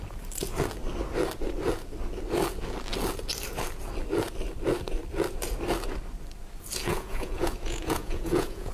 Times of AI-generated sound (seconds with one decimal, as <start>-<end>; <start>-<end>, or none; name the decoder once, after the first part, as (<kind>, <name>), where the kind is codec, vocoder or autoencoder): 6.9-8.7 (vocoder, Vocos)

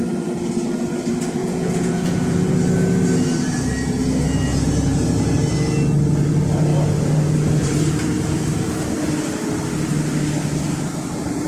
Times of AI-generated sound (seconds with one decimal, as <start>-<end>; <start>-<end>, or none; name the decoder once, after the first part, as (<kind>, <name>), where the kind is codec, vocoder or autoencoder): 1.4-2.5 (vocoder, Vocos)

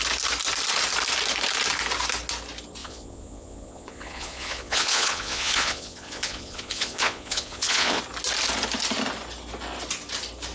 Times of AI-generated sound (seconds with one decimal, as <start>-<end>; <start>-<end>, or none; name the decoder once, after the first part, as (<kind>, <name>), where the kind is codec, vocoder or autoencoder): 2.8-8.0 (vocoder, Vocos)

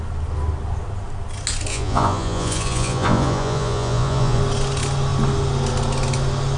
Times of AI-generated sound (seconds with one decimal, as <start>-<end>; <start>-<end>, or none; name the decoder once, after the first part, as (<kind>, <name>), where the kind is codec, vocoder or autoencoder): 1.7-4.4 (vocoder, Vocos)

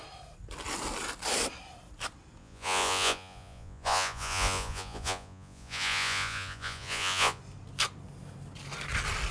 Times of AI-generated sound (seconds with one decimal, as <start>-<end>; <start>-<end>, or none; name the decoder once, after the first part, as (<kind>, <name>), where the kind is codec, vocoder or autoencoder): 2.4-7.4 (vocoder, Vocos)

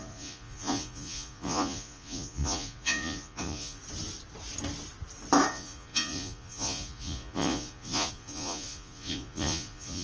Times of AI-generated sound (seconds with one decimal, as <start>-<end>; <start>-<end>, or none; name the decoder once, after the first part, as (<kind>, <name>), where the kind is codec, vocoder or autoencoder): 0.0-3.8 (vocoder, Vocos); 5.5-10.0

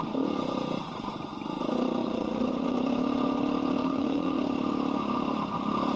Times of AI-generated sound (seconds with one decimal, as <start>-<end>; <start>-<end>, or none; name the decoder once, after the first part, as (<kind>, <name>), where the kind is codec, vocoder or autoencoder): 2.0-2.8 (vocoder, Vocos); 3.8-4.4